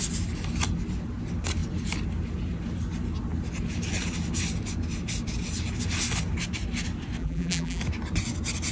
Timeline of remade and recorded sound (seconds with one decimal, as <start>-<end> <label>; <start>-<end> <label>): 0.0-7.2 recorded; 7.2-7.8 remade; 7.8-8.7 recorded